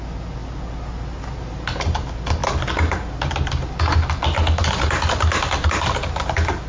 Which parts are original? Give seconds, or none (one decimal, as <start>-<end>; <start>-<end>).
0.0-6.7